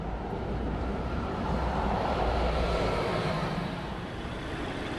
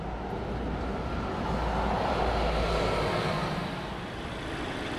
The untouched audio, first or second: second